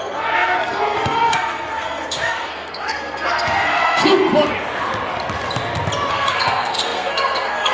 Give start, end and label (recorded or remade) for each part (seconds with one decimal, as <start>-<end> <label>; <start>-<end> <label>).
0.0-4.2 remade; 4.2-6.1 recorded; 6.1-7.7 remade